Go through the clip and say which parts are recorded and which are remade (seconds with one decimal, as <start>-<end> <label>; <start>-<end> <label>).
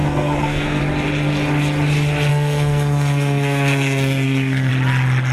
0.0-0.8 remade; 0.8-2.3 recorded; 2.3-4.7 remade; 4.7-5.3 recorded